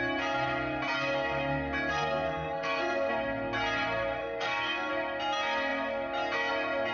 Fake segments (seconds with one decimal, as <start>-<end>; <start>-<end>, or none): 1.9-3.1; 4.2-4.9